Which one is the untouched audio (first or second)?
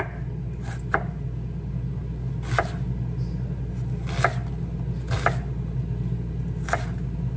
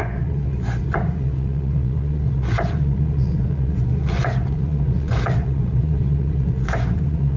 first